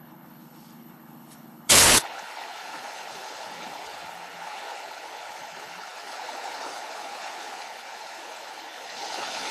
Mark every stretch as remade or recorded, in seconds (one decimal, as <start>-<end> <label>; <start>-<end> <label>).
0.0-9.5 remade